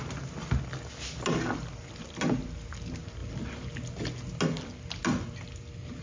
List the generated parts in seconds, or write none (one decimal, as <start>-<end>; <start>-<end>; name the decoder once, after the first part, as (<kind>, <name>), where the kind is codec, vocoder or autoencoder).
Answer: none